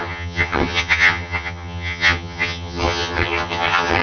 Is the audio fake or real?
fake